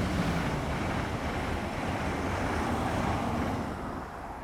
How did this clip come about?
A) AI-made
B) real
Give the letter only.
B